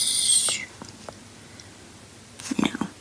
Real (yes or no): yes